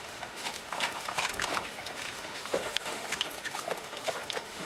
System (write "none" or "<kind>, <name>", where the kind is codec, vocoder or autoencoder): autoencoder, DAC-VAE